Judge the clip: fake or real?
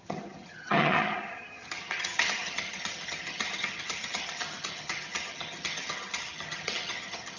fake